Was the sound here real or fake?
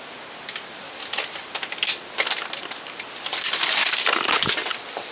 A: real